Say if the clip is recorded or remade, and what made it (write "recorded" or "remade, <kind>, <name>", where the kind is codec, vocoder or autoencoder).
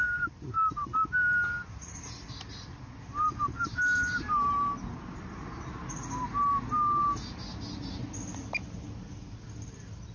recorded